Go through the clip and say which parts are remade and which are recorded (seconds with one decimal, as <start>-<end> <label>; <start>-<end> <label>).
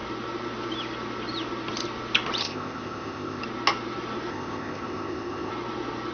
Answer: 0.0-2.4 recorded; 2.4-3.4 remade; 3.4-4.3 recorded; 4.3-5.5 remade; 5.5-6.1 recorded